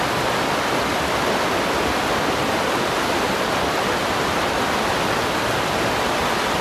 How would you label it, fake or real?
real